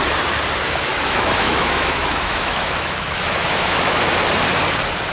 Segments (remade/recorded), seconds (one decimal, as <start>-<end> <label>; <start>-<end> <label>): 0.0-0.9 recorded; 0.9-4.0 remade; 4.0-5.1 recorded